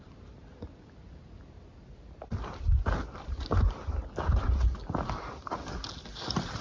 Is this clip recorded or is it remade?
recorded